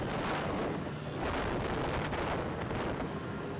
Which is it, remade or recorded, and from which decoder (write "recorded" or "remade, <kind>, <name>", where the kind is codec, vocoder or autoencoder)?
recorded